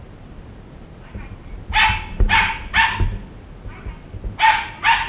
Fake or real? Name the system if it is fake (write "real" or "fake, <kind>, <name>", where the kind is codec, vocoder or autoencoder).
real